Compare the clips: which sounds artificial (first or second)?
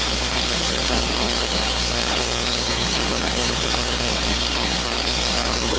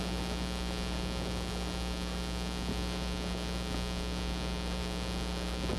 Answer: first